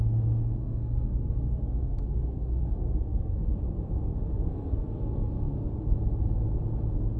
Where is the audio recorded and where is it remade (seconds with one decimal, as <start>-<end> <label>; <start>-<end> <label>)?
0.0-0.6 recorded; 0.6-3.5 remade; 3.5-4.1 recorded; 4.1-5.7 remade; 5.7-7.2 recorded